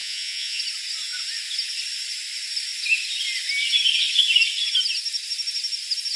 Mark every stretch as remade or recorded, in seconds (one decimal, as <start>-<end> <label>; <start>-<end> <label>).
0.0-0.6 remade; 0.6-6.2 recorded

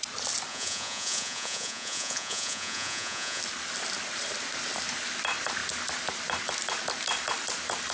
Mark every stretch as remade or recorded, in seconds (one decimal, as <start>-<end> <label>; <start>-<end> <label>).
0.0-0.5 recorded; 0.5-3.4 remade; 3.4-7.9 recorded

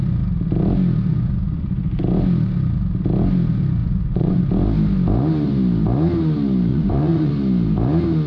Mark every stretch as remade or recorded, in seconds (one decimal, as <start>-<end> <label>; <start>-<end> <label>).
0.0-1.1 recorded; 1.1-2.0 remade; 2.0-3.8 recorded; 3.8-4.4 remade; 4.4-6.7 recorded; 6.7-7.3 remade; 7.3-8.3 recorded

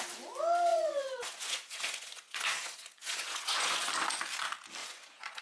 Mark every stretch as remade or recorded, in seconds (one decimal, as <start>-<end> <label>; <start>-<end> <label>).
0.0-0.7 recorded; 0.7-3.9 remade; 3.9-4.8 recorded; 4.8-5.4 remade

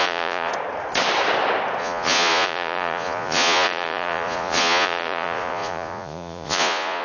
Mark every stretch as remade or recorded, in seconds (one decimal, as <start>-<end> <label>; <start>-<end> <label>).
0.0-0.5 remade; 0.5-1.8 recorded; 1.8-7.0 remade

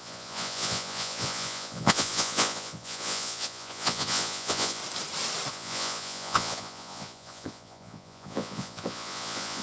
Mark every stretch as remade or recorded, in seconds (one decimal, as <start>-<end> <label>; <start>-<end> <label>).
0.0-4.8 remade; 4.8-5.5 recorded; 5.5-9.6 remade

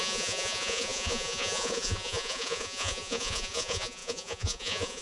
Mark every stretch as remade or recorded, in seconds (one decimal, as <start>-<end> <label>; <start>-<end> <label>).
0.0-5.0 remade

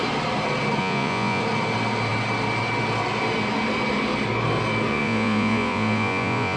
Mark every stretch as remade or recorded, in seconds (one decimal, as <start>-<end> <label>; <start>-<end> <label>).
0.0-0.8 recorded; 0.8-1.4 remade; 1.4-4.9 recorded; 4.9-6.6 remade